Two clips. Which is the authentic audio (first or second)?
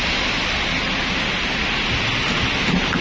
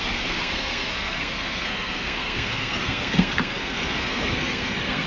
first